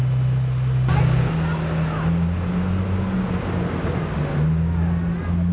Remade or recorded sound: recorded